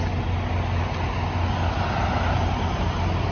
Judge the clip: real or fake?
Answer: real